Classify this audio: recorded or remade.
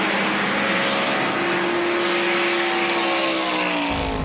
recorded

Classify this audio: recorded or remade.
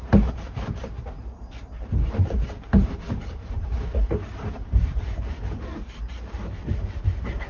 remade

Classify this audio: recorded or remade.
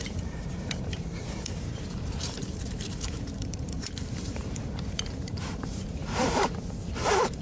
remade